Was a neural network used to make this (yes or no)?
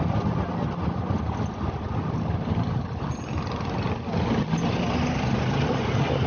no